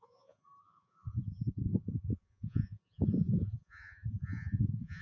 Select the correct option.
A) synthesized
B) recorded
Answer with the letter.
A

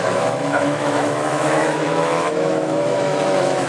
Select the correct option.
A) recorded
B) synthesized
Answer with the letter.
B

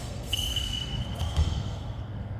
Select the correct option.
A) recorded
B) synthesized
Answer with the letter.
B